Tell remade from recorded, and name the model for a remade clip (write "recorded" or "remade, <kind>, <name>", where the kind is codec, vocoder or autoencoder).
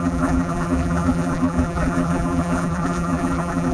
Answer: remade, vocoder, BigVGAN v2